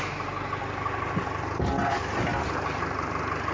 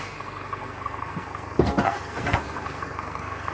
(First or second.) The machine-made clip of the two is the second